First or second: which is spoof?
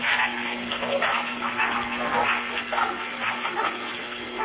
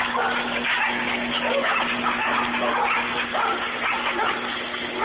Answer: first